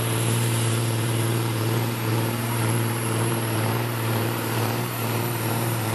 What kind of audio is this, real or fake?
fake